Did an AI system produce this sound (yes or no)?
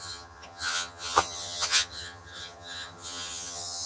yes